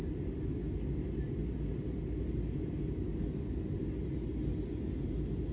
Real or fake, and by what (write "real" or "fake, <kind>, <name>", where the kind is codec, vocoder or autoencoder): real